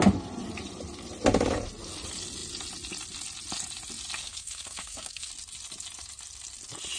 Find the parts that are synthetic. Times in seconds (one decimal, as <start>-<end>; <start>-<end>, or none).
4.2-5.3